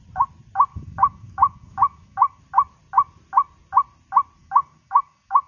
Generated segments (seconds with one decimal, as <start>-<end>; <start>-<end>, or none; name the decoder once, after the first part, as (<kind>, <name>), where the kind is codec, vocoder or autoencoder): 0.7-2.4 (codec, DAC); 4.4-5.5